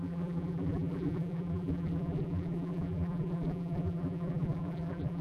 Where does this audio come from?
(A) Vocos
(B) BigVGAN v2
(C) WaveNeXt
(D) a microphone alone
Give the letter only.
B